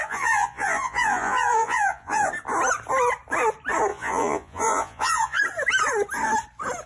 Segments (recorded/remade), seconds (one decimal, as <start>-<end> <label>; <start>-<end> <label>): 0.0-2.3 remade; 2.3-3.9 recorded; 3.9-5.4 remade; 5.4-6.9 recorded